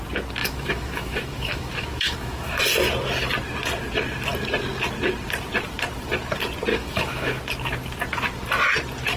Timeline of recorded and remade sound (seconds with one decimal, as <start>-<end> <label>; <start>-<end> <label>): 0.0-0.4 recorded; 0.4-2.6 remade; 2.6-6.7 recorded; 6.7-7.4 remade; 7.4-9.2 recorded